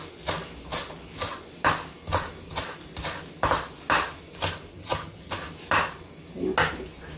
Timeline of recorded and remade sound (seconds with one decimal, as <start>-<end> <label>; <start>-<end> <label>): 0.0-4.7 recorded; 4.7-5.3 remade; 5.3-7.2 recorded